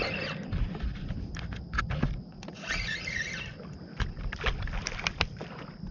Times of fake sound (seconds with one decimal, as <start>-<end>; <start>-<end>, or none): 2.2-3.2